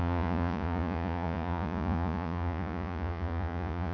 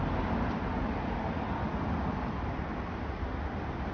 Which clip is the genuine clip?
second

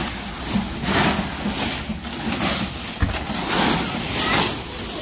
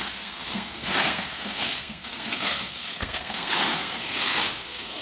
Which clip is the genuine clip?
first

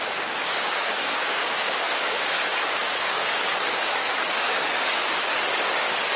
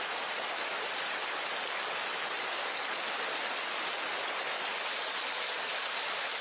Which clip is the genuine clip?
second